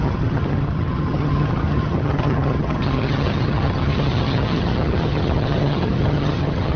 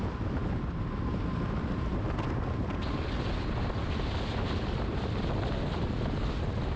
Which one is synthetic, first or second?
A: first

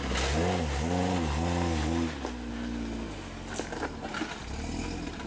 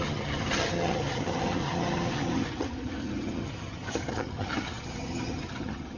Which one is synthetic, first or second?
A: second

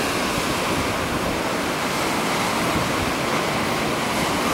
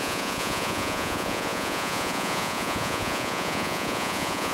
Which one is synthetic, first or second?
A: second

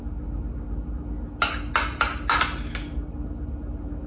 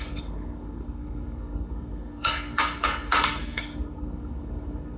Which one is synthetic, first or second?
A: second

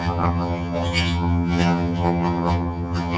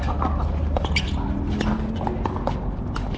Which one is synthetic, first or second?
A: first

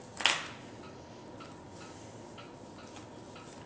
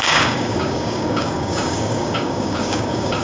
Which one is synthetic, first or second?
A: second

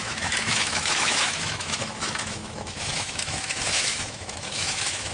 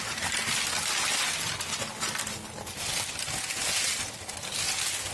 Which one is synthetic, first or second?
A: first